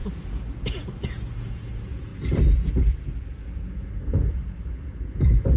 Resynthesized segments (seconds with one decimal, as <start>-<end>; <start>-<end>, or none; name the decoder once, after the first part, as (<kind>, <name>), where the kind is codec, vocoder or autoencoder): 0.0-2.1 (vocoder, Vocos); 2.7-5.6